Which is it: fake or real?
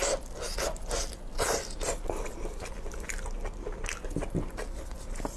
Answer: real